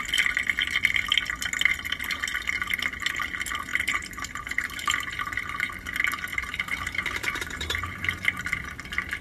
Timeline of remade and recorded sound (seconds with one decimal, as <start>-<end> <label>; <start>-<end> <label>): 0.0-3.7 recorded; 3.7-5.7 remade; 5.7-6.3 recorded; 6.3-8.7 remade; 8.7-9.2 recorded